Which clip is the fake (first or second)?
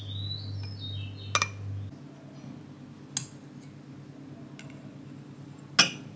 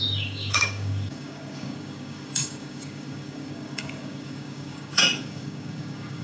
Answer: second